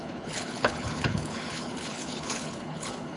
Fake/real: fake